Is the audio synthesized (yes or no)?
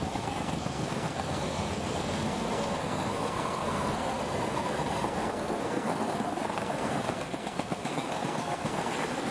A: yes